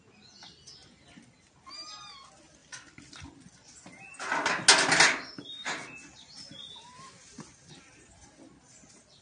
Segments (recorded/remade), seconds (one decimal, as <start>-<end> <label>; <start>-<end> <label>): 0.0-9.2 recorded